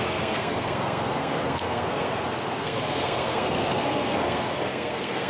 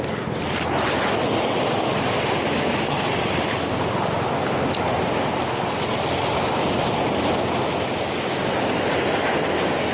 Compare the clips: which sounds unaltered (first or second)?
second